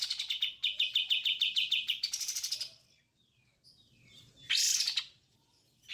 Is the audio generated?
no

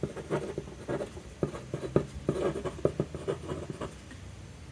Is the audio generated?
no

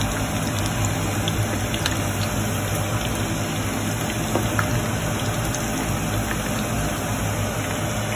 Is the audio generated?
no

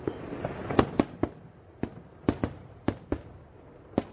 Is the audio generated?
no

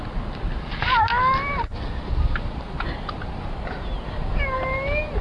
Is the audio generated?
no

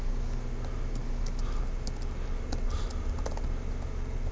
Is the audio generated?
no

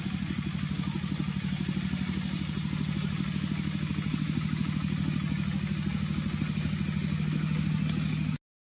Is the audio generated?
no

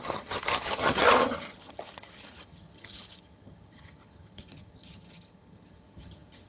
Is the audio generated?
yes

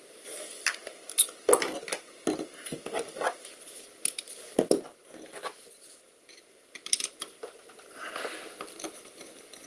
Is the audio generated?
no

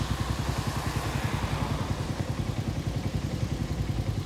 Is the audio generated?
no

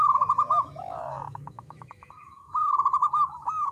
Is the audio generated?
yes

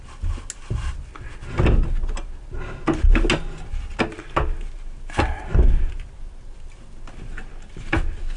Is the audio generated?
no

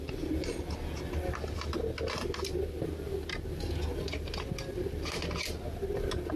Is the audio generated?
no